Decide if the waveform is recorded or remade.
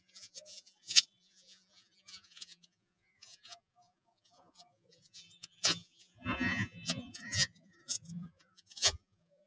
remade